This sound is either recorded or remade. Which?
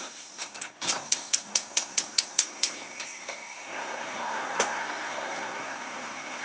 remade